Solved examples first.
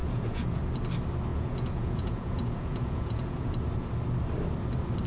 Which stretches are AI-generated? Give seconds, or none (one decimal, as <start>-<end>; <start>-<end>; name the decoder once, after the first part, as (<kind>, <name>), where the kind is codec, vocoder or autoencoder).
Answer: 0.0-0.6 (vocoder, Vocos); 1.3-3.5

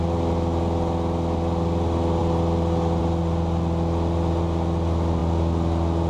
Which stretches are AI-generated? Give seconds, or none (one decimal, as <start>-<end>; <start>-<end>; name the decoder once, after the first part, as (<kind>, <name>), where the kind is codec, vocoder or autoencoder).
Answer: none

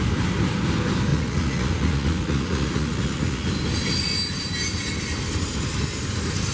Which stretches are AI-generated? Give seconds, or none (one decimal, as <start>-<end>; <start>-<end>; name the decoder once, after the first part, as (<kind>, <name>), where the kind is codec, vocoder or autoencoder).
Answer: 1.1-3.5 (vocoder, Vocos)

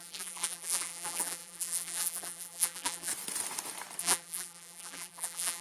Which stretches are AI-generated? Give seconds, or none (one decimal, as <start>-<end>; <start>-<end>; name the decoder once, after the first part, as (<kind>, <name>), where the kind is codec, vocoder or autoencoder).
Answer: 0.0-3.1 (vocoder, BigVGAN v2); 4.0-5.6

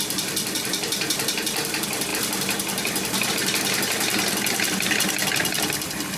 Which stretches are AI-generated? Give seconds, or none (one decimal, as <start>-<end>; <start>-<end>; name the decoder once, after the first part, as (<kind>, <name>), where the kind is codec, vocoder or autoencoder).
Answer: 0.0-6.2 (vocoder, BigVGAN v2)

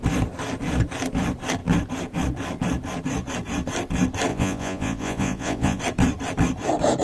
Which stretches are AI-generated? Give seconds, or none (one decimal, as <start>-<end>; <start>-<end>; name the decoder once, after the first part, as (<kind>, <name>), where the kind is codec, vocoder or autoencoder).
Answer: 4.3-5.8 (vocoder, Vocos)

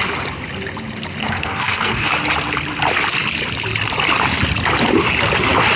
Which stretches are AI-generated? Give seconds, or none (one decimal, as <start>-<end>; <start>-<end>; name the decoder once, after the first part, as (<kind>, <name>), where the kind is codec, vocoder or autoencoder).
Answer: 1.2-2.1 (codec, SNAC)

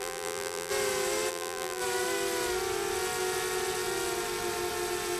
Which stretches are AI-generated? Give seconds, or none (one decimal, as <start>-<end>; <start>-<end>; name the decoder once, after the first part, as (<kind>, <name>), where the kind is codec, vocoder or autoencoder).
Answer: 0.0-0.7 (vocoder, BigVGAN v2); 1.3-1.8